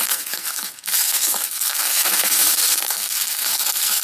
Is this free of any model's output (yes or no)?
no